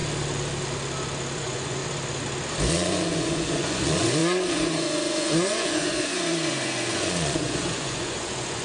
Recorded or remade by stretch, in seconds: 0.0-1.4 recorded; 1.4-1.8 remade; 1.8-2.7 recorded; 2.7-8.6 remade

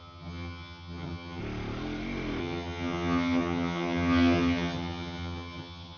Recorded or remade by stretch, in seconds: 0.0-1.4 remade; 1.4-2.4 recorded; 2.4-6.0 remade

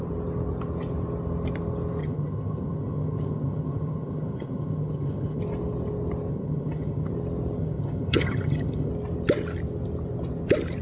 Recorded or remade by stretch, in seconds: 0.0-2.0 recorded; 2.0-5.4 remade; 5.4-6.3 recorded; 6.3-7.1 remade; 7.1-7.6 recorded; 7.6-8.9 remade; 8.9-10.8 recorded